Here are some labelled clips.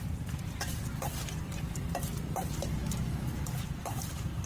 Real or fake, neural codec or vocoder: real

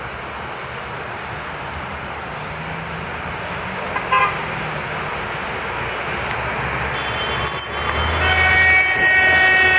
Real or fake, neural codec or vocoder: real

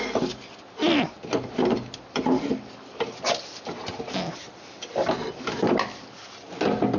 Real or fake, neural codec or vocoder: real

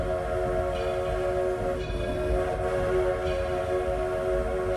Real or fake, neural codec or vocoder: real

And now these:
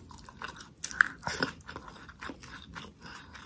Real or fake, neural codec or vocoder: real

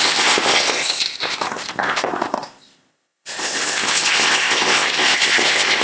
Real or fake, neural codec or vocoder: fake, codec, ZipCodec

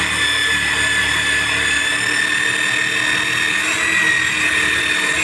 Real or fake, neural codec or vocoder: real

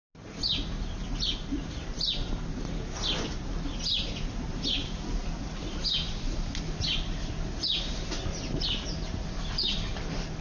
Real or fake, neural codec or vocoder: real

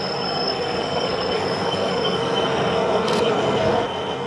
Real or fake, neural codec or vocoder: fake, codec, SNAC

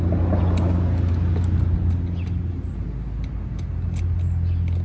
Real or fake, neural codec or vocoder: real